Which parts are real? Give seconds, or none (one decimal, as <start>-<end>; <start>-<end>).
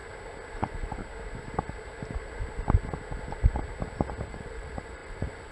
0.0-0.5; 1.0-4.3